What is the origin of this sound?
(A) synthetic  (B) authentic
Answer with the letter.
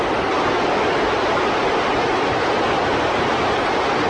B